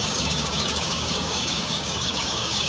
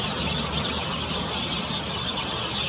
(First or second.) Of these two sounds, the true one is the second